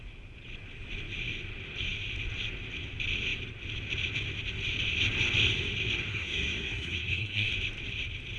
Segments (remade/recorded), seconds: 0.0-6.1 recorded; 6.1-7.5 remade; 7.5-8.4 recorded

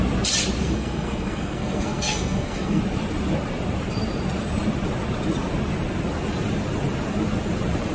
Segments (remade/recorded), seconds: 0.0-0.6 recorded; 0.6-2.8 remade; 2.8-7.9 recorded

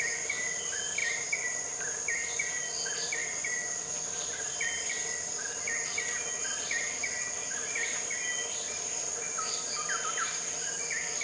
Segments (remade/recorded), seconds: 0.0-11.2 recorded